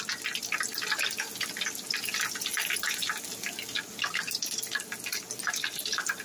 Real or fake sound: real